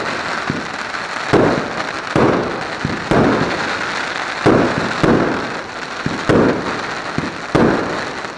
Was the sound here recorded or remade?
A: recorded